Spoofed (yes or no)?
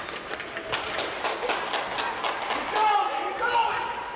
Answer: no